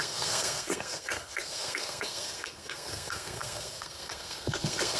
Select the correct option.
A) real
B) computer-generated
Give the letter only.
B